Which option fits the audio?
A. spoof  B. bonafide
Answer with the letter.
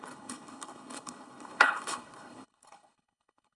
A